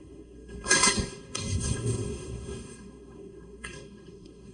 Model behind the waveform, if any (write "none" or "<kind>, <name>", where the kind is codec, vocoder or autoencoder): codec, SNAC